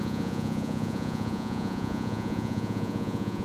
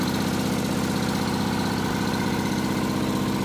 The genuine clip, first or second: second